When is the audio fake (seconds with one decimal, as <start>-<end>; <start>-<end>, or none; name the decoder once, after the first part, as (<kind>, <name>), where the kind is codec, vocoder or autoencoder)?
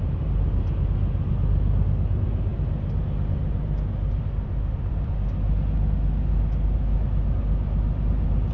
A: none